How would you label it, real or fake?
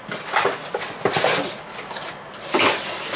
real